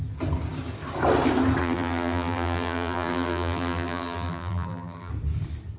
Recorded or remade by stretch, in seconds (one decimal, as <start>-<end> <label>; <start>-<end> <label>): 0.0-1.6 recorded; 1.6-5.1 remade; 5.1-5.8 recorded